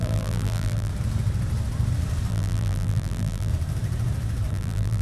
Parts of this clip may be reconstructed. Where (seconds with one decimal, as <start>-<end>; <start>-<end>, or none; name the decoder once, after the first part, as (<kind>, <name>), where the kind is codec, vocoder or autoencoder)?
0.0-0.9 (vocoder, BigVGAN v2); 2.3-3.5; 4.5-5.0